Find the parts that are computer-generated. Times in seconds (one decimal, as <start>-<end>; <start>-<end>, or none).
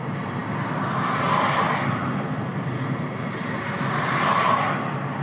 none